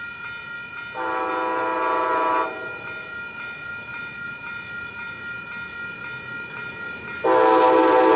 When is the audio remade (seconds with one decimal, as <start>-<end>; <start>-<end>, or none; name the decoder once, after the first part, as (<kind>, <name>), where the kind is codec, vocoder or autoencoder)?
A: none